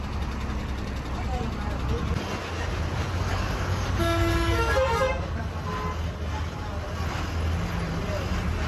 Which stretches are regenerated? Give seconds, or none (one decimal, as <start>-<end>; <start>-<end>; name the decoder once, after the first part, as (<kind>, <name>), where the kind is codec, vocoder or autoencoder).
3.3-5.4 (codec, DAC)